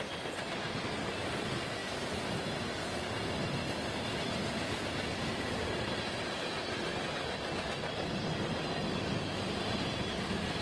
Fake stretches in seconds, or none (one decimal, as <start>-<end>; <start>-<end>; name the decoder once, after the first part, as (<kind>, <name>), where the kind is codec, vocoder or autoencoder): none